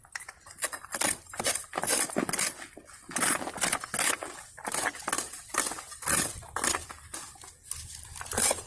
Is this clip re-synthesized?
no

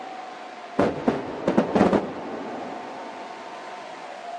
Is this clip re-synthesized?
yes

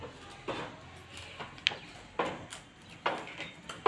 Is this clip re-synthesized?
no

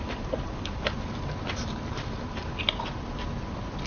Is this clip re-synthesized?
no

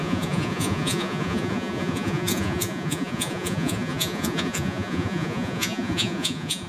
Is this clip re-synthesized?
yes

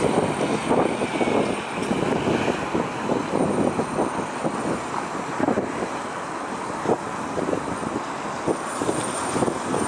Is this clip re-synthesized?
no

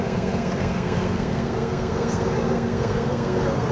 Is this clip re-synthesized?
yes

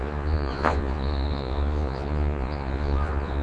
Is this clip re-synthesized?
yes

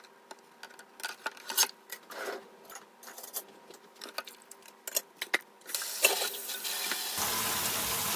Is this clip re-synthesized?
no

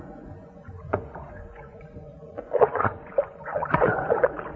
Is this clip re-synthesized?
yes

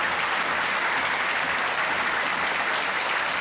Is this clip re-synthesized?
no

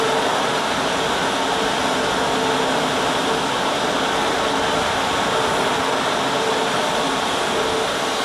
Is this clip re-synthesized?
no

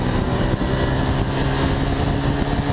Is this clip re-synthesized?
no